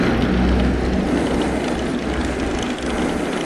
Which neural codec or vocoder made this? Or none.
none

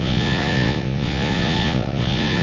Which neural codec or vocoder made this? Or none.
vocoder, Vocos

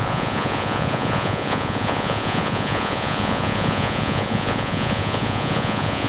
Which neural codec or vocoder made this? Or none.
vocoder, Vocos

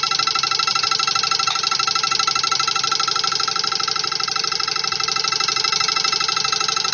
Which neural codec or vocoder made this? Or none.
none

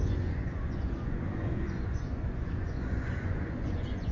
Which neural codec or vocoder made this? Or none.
vocoder, Vocos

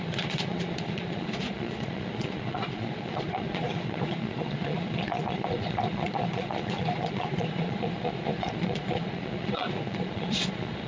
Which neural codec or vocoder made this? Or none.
vocoder, Vocos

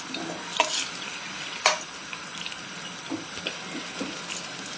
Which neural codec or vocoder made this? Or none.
none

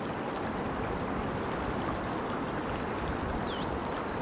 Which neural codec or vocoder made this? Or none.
none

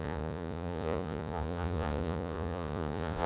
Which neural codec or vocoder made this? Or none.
vocoder, Vocos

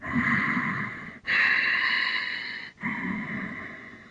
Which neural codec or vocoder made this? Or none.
vocoder, Vocos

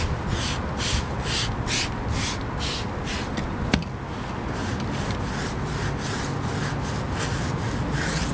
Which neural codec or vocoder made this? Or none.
none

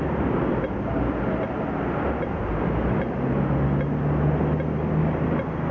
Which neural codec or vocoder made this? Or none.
none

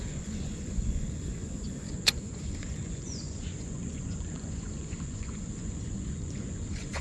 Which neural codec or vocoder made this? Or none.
vocoder, Vocos